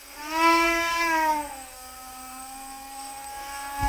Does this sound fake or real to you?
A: fake